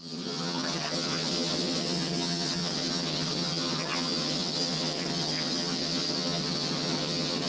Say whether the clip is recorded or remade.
remade